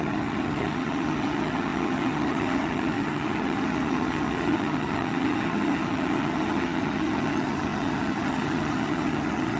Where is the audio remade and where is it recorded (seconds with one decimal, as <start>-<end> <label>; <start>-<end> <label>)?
0.0-9.6 remade